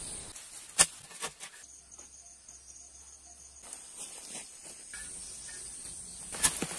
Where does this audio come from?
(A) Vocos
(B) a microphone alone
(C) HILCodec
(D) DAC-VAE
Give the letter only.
B